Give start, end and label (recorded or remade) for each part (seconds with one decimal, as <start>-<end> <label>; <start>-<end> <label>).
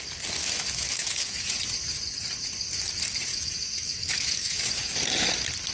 0.0-0.4 recorded; 0.4-1.5 remade; 1.5-3.3 recorded; 3.3-4.6 remade; 4.6-5.7 recorded